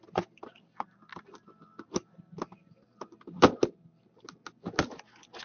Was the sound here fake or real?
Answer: real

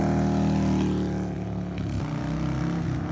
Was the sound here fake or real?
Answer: real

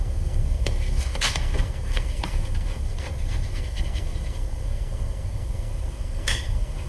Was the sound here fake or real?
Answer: fake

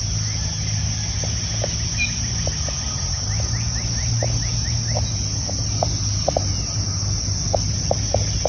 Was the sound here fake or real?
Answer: real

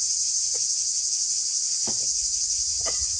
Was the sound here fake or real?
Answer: real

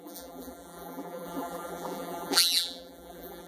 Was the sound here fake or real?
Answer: fake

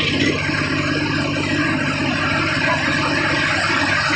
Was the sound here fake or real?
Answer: real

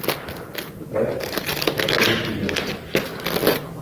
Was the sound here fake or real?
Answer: real